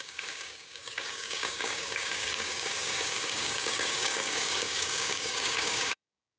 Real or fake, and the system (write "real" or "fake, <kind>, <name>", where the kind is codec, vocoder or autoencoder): fake, codec, DAC